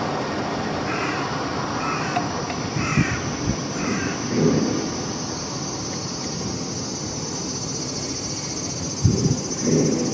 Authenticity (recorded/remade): recorded